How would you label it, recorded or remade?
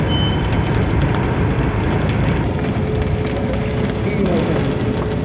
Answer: recorded